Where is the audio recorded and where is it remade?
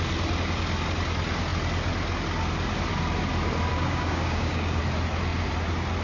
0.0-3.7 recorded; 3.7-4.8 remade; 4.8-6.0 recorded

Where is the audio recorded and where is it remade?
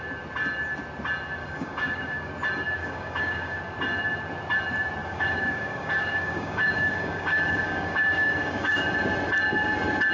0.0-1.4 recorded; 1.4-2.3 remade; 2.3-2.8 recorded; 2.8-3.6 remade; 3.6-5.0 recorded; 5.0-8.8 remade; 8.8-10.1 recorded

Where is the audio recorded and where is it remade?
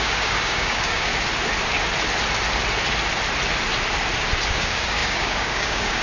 0.0-1.1 remade; 1.1-4.5 recorded; 4.5-6.0 remade